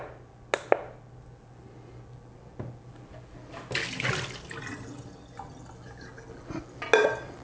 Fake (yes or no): no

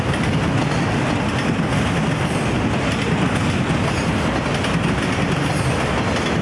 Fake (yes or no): no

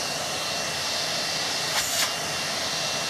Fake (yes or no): no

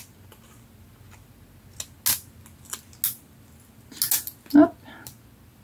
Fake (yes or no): no